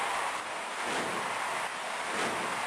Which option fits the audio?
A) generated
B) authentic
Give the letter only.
B